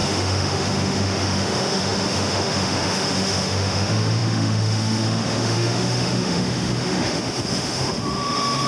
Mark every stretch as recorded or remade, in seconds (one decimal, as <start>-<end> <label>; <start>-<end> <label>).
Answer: 0.0-8.7 remade